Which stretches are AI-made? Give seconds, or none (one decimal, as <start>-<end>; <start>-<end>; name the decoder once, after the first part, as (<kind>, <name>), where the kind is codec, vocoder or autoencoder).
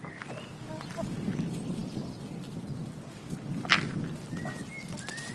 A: none